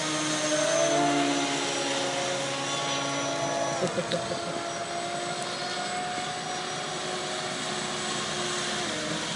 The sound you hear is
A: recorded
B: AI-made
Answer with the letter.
A